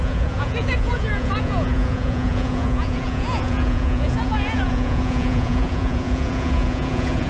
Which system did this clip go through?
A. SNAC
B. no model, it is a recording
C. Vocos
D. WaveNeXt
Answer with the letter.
C